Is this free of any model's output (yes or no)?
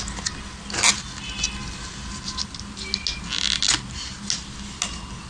yes